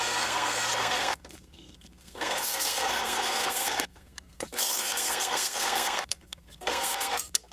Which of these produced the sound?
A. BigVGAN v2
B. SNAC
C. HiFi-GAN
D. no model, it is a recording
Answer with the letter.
B